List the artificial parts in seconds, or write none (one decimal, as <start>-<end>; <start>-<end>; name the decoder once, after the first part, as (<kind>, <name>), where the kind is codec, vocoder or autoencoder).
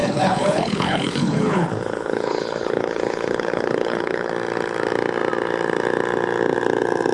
0.0-4.3 (codec, HILCodec)